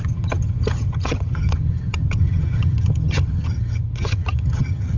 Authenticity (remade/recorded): remade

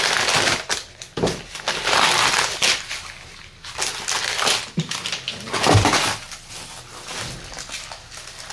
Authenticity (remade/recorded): recorded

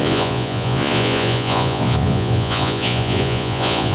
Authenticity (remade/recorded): remade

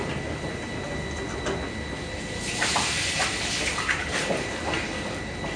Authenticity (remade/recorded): recorded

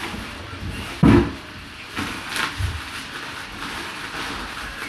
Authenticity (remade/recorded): recorded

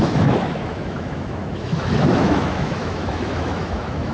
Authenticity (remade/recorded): remade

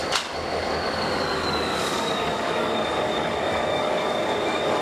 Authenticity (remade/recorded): remade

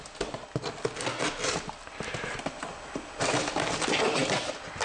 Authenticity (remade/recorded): recorded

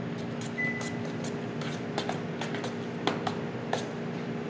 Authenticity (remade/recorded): recorded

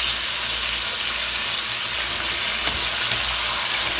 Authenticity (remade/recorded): recorded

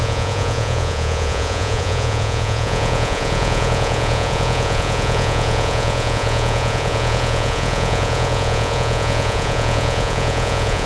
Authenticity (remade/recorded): remade